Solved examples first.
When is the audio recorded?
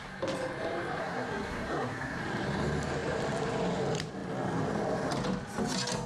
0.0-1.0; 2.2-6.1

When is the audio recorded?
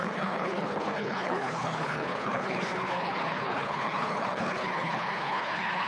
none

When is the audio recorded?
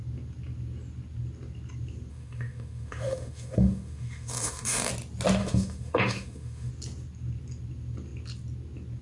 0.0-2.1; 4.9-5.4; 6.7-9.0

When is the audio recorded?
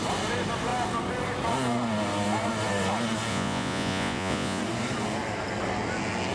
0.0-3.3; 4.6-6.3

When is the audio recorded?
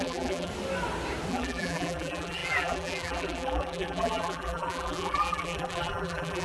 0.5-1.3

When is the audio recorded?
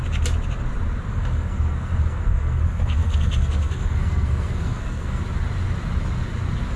0.0-1.1; 5.2-6.8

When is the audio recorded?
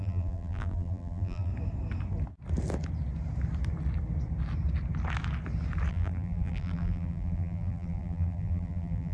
1.5-5.9